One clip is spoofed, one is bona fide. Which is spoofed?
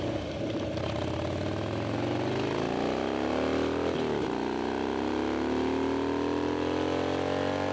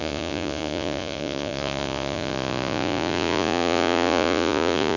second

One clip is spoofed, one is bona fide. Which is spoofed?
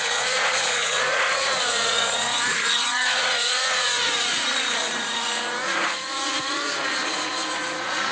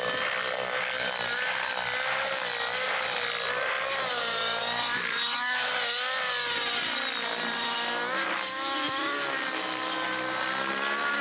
first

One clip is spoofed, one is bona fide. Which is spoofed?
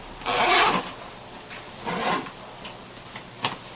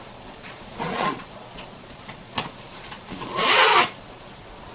second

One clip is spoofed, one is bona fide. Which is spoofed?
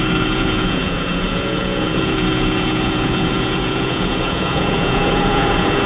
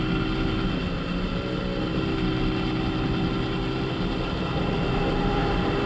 first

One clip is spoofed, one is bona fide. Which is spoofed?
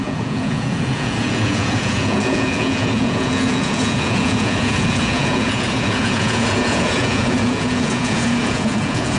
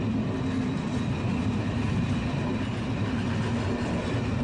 first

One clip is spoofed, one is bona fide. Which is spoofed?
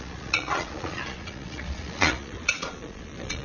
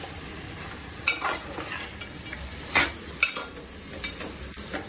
first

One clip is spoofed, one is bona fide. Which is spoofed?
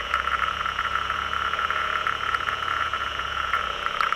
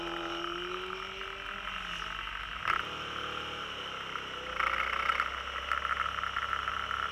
first